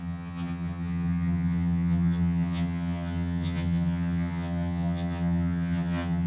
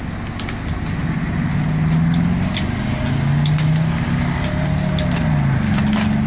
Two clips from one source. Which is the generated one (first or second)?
first